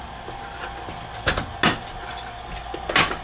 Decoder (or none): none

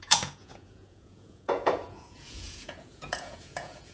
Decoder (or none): vocoder, Vocos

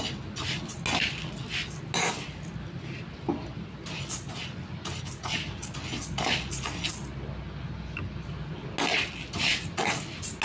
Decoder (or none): none